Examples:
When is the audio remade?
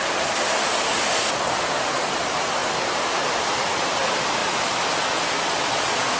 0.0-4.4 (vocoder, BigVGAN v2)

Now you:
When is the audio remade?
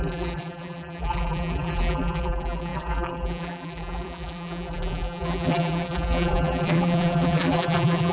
0.0-8.1 (vocoder, BigVGAN v2)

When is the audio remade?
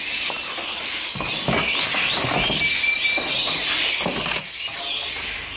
none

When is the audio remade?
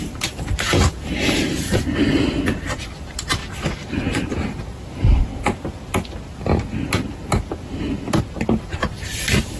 0.0-5.3 (vocoder, BigVGAN v2); 8.2-9.6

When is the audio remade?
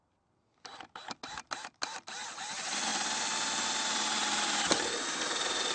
0.0-1.2 (vocoder, BigVGAN v2); 2.4-2.9; 3.6-5.7